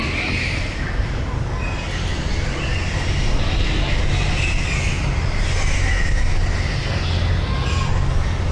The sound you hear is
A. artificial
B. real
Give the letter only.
B